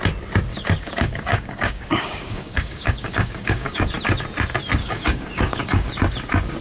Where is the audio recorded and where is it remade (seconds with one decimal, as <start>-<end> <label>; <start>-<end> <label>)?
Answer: 0.0-0.5 recorded; 0.5-3.9 remade; 3.9-4.8 recorded; 4.8-5.9 remade; 5.9-6.6 recorded